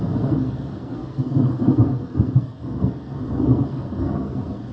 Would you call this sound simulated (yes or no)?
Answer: yes